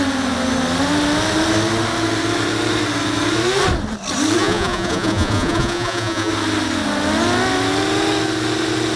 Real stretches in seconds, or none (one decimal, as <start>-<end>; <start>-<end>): 0.0-4.4; 6.3-9.0